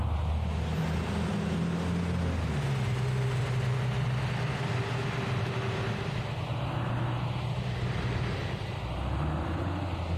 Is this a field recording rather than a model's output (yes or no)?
yes